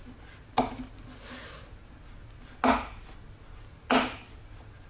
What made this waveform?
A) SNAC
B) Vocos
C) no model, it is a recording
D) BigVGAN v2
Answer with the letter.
C